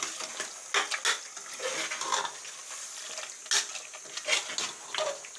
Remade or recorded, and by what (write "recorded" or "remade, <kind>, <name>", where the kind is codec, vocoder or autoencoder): recorded